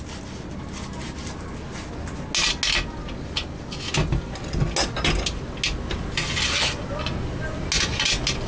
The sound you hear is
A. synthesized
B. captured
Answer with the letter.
B